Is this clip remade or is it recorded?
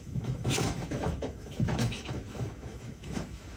remade